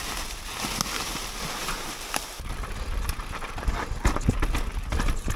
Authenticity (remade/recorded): recorded